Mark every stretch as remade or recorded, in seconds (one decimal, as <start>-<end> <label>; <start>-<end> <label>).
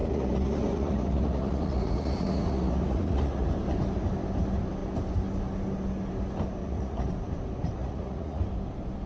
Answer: 0.0-3.5 remade; 3.5-6.6 recorded; 6.6-7.1 remade; 7.1-7.8 recorded; 7.8-8.4 remade; 8.4-9.1 recorded